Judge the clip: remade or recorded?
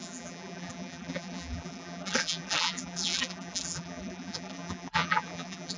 remade